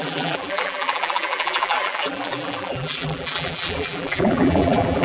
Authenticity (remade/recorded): remade